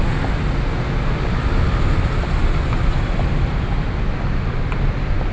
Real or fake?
real